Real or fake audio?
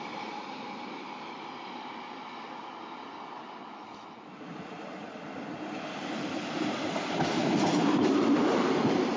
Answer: fake